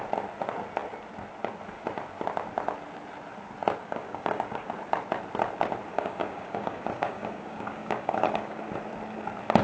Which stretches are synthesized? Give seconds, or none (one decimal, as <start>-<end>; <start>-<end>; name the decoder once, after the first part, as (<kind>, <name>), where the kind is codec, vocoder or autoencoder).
3.8-4.7 (codec, DAC); 5.9-8.6